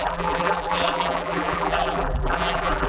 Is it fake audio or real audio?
fake